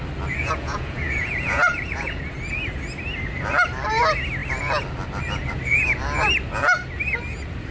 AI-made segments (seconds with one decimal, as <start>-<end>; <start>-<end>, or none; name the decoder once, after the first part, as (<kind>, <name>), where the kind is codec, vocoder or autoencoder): 0.4-2.2 (vocoder, Vocos)